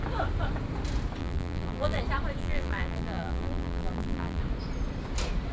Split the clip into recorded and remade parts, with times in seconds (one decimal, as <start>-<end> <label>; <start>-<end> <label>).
0.0-1.2 recorded; 1.2-2.0 remade; 2.0-2.4 recorded; 2.4-4.4 remade; 4.4-5.5 recorded